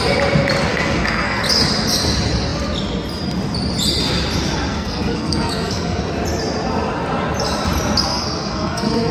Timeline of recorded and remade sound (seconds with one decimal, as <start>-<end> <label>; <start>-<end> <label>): 0.0-0.7 recorded; 0.7-1.4 remade; 1.4-4.7 recorded; 4.7-6.0 remade; 6.0-8.1 recorded; 8.1-9.1 remade